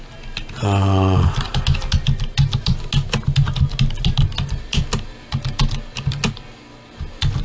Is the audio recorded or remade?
recorded